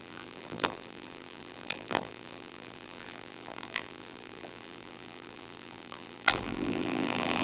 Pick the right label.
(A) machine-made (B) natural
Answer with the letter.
A